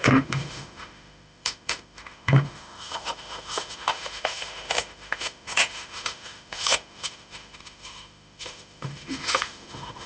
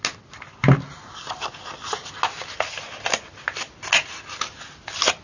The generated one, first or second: first